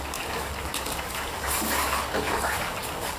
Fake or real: fake